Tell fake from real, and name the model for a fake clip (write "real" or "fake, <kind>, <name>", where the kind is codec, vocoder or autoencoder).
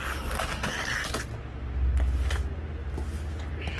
real